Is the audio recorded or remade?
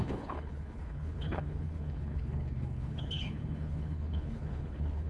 remade